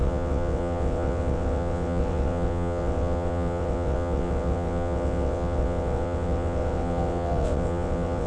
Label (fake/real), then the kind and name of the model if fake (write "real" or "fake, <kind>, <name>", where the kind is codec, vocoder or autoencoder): fake, vocoder, WaveNeXt